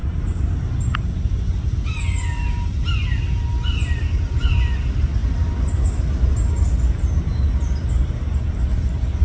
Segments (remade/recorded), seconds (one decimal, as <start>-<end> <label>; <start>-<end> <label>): 0.0-9.2 recorded